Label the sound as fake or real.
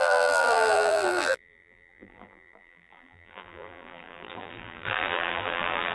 fake